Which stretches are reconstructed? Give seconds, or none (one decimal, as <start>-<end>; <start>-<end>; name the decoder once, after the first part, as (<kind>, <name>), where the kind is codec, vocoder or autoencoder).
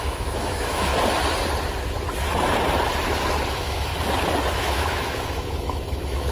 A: 0.0-0.9 (autoencoder, DAC-VAE); 3.5-3.9; 4.5-6.3